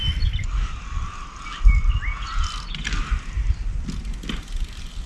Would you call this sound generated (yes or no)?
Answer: no